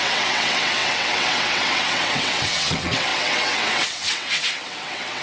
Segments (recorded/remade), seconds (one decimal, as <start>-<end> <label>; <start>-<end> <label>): 0.0-5.2 remade